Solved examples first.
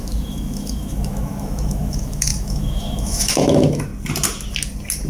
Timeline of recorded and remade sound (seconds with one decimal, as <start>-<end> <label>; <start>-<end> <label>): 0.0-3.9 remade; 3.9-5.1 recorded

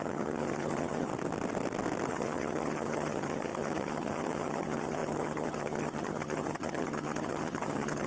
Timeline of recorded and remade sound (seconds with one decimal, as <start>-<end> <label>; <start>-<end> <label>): 0.0-1.1 remade; 1.1-2.1 recorded; 2.1-8.1 remade

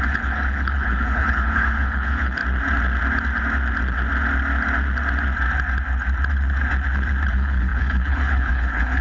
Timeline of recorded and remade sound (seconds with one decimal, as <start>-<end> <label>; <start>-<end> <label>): 0.0-2.4 remade; 2.4-7.3 recorded; 7.3-9.0 remade

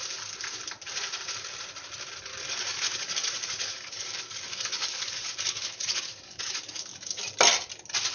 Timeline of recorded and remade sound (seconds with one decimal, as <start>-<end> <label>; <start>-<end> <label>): 0.0-2.3 recorded; 2.3-7.2 remade; 7.2-8.1 recorded

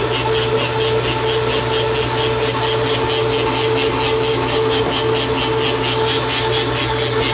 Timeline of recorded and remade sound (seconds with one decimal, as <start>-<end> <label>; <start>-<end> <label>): 0.0-4.3 recorded; 4.3-4.8 remade; 4.8-7.3 recorded